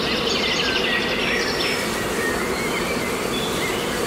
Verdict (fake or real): real